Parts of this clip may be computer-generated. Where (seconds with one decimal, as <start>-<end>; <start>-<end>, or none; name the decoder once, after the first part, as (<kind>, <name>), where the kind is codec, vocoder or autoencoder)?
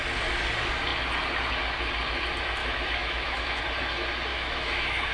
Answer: 2.6-3.6 (autoencoder, DAC-VAE); 4.3-5.1